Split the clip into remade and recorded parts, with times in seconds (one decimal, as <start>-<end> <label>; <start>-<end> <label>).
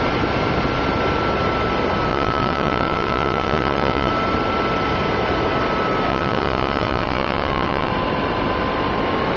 0.0-2.1 recorded; 2.1-4.1 remade; 4.1-6.1 recorded; 6.1-7.9 remade; 7.9-9.4 recorded